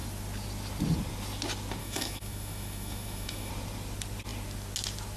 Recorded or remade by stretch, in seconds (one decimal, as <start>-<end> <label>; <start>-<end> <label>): 0.0-1.8 recorded; 1.8-3.5 remade; 3.5-5.2 recorded